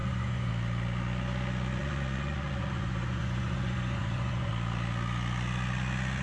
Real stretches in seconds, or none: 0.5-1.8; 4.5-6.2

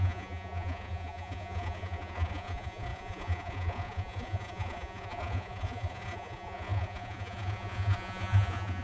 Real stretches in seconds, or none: none

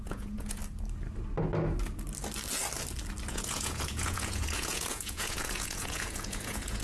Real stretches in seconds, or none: 0.6-3.3

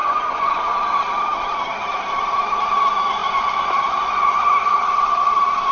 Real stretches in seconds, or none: 0.5-3.2; 4.7-5.7

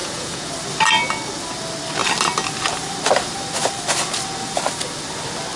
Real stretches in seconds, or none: 0.5-5.6

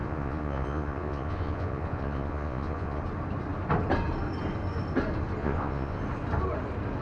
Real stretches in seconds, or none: 3.0-5.4; 6.0-7.0

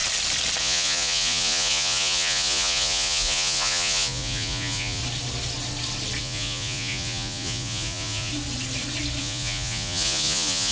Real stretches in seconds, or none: 0.0-0.6; 5.0-6.2; 8.3-9.2

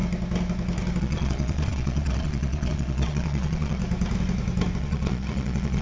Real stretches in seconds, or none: 0.0-1.0; 3.8-4.8